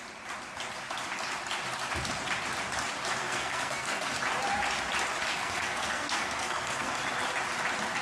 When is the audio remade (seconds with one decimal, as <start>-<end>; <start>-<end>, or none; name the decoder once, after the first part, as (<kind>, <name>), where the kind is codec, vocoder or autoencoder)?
3.2-4.2 (codec, SNAC); 5.3-7.0